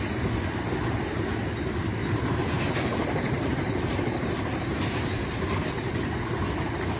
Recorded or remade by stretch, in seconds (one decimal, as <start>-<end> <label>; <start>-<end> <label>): 0.0-2.0 recorded; 2.0-5.6 remade; 5.6-7.0 recorded